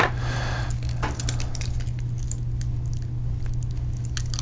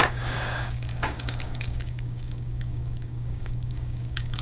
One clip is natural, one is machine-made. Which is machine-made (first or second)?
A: second